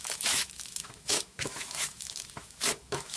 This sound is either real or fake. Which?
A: fake